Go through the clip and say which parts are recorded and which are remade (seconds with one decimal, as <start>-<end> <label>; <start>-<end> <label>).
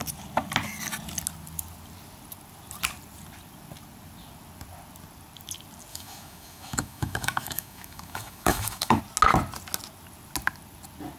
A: 0.0-5.9 recorded; 5.9-9.0 remade; 9.0-11.2 recorded